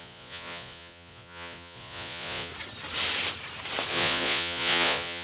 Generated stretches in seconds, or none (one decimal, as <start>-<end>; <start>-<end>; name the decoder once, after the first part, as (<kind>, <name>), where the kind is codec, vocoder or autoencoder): 0.0-2.5 (vocoder, Vocos); 3.9-5.2